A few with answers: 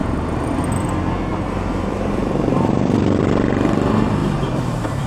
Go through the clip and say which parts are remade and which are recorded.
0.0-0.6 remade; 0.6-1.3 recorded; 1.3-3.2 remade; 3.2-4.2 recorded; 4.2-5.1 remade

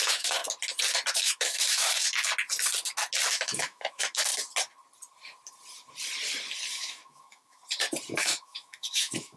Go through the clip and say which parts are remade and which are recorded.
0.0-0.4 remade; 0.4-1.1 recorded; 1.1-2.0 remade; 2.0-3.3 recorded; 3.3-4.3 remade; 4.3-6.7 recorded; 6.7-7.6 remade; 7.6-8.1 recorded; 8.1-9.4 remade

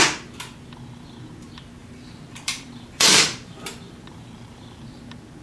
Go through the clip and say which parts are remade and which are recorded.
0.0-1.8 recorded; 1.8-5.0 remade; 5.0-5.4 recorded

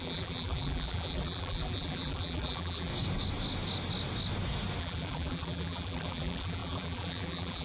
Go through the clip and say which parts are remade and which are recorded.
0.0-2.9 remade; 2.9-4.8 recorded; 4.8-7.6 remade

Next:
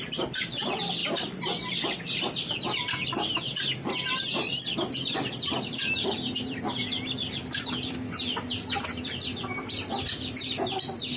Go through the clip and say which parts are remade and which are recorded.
0.0-11.2 remade